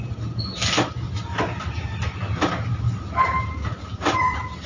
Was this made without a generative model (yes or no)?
yes